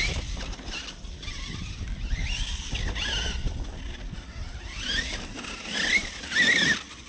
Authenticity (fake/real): real